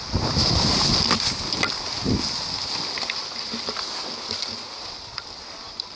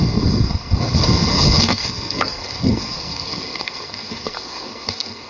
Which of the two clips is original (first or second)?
first